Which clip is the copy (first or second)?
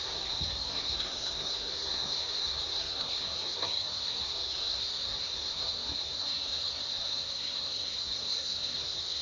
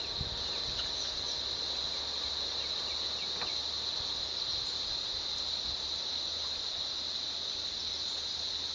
first